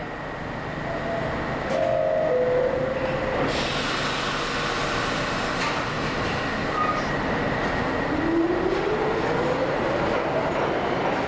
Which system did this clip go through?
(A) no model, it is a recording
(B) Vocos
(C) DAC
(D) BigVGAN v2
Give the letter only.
A